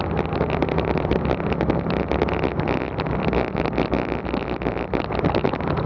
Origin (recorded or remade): recorded